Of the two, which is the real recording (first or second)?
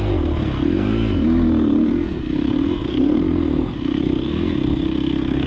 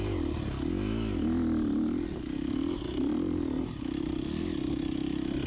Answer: second